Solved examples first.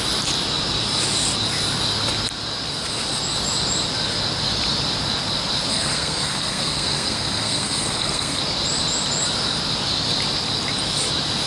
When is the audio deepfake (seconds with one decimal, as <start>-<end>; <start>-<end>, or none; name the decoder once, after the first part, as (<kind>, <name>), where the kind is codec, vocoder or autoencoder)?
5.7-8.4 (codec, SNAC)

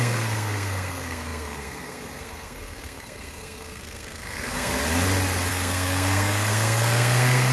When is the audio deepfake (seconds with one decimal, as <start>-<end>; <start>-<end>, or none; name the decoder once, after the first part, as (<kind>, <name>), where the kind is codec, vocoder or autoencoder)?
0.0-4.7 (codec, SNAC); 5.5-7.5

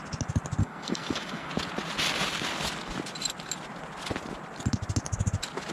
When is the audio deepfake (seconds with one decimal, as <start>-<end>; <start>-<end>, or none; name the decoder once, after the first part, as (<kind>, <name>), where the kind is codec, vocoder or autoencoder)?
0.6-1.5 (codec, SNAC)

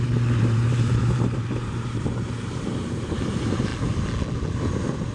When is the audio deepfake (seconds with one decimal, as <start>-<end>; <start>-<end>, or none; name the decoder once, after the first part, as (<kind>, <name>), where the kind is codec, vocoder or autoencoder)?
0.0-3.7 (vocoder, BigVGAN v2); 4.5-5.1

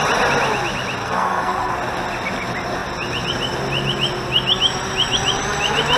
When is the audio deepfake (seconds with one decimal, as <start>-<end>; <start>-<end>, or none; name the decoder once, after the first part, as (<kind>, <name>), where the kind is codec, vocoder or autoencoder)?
1.0-1.7 (codec, SNAC)

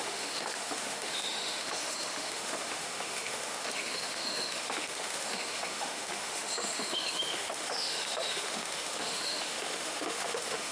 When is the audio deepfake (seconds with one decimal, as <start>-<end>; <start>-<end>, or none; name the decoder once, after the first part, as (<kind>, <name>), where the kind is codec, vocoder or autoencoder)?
0.0-10.7 (autoencoder, DAC-VAE)

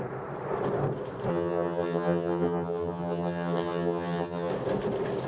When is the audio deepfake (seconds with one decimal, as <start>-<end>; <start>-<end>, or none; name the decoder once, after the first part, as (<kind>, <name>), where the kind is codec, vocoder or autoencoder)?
1.3-4.5 (vocoder, HiFi-GAN)